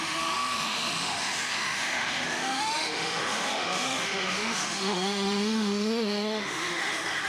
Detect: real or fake fake